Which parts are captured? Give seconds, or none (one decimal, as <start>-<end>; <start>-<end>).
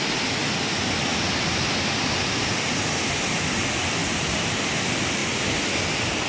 0.0-1.1; 1.9-4.0; 4.7-6.3